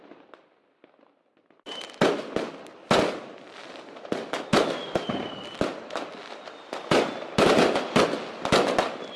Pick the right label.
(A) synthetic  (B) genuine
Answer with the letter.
B